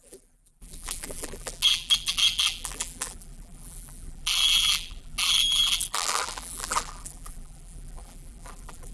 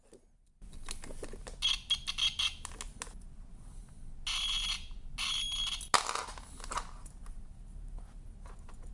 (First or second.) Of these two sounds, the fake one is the first